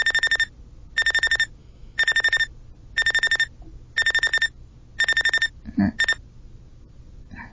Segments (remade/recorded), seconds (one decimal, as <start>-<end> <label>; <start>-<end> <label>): 0.0-1.6 recorded; 1.6-2.4 remade; 2.4-7.5 recorded